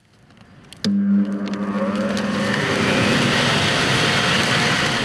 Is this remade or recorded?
recorded